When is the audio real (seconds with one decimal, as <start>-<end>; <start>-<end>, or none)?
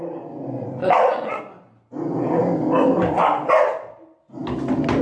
0.0-0.8; 1.4-5.0